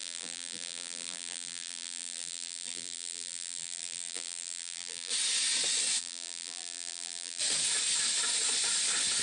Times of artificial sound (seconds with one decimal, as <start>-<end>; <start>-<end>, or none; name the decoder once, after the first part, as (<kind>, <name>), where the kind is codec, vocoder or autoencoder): 0.0-5.1 (vocoder, BigVGAN v2); 6.0-7.4